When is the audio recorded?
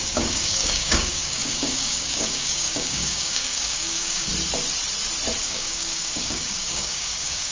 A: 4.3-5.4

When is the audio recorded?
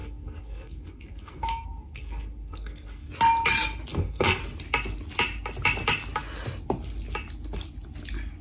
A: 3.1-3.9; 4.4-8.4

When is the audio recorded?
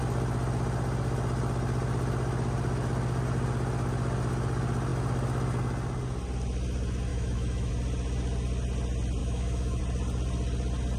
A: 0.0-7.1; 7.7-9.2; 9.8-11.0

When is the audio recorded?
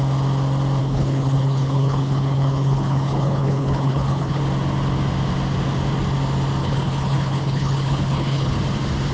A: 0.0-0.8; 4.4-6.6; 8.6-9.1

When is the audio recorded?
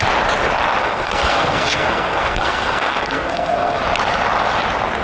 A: 0.0-0.8; 3.8-5.0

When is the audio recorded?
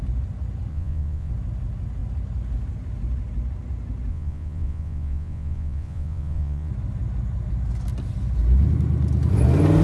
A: 0.0-0.7; 1.3-4.1; 6.7-9.8